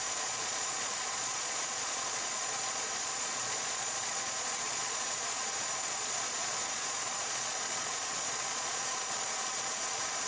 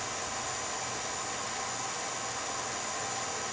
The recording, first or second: second